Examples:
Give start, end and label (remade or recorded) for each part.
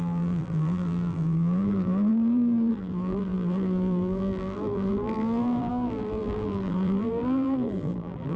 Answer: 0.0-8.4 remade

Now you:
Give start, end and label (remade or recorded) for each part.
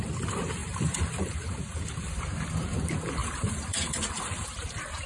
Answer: 0.0-0.6 recorded; 0.6-2.2 remade; 2.2-3.2 recorded; 3.2-4.6 remade; 4.6-5.1 recorded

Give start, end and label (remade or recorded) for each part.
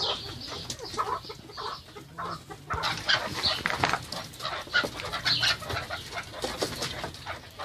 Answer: 0.0-7.6 recorded